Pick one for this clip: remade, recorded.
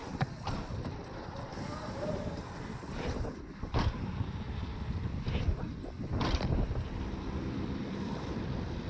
remade